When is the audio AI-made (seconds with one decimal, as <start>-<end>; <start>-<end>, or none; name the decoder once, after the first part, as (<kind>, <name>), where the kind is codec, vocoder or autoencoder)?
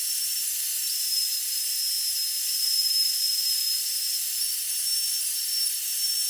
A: 0.0-1.8 (vocoder, BigVGAN v2); 2.4-6.3